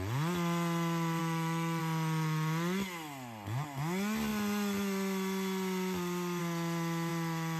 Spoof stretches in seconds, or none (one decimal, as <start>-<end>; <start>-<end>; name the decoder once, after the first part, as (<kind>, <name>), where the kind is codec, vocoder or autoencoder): 1.2-1.8 (autoencoder, DAC-VAE)